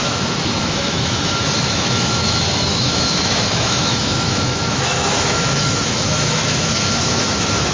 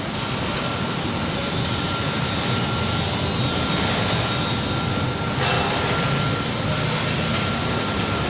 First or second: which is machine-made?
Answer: first